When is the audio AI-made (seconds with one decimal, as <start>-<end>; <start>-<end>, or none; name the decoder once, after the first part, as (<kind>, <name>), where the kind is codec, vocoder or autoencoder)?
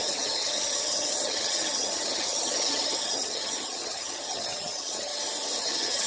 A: 0.0-5.1 (vocoder, HiFi-GAN); 5.6-6.1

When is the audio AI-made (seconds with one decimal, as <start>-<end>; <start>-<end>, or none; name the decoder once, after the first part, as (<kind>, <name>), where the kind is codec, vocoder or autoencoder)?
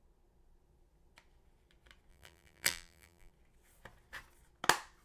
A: 2.1-3.3 (vocoder, BigVGAN v2)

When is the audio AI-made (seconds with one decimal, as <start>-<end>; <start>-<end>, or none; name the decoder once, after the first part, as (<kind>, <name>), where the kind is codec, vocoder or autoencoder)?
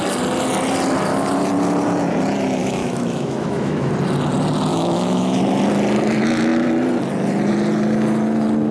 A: 2.6-3.9 (autoencoder, DAC-VAE); 4.7-5.4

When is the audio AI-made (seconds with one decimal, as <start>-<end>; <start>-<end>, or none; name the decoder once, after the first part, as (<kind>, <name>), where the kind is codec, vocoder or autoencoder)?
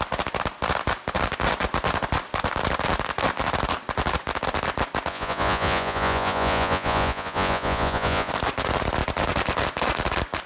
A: 5.1-8.3 (vocoder, Vocos)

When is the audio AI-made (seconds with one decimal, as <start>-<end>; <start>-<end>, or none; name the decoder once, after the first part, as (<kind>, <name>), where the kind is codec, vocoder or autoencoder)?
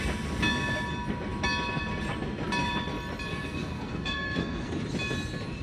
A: 3.3-4.7 (codec, SNAC)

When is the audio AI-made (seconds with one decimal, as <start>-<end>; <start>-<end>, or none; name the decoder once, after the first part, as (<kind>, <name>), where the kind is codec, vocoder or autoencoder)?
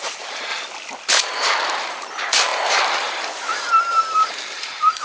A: 0.0-0.5 (vocoder, BigVGAN v2); 1.1-5.0